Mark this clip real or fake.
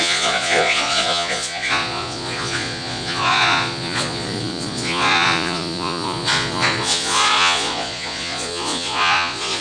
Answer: fake